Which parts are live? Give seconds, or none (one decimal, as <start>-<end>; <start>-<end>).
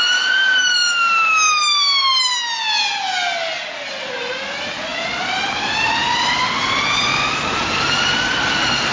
0.0-8.9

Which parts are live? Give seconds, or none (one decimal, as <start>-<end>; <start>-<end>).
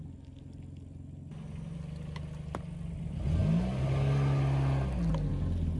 0.0-5.8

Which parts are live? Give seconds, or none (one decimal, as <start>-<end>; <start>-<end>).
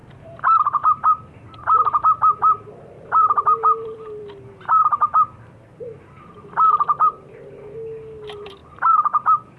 5.1-8.2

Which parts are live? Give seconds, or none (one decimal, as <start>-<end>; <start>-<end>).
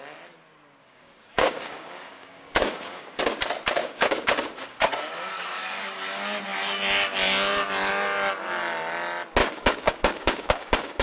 0.0-0.8; 3.2-3.8; 4.8-9.4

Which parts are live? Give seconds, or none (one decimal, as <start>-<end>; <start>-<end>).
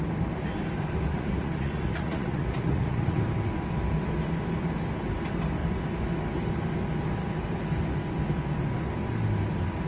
0.0-1.1; 3.2-9.9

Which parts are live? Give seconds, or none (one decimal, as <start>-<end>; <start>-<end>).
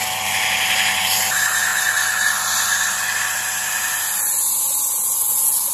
1.7-5.1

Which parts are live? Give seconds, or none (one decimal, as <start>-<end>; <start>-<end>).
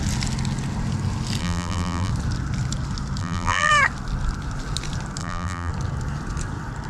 0.0-1.4; 2.1-3.2; 3.7-5.2; 5.7-6.9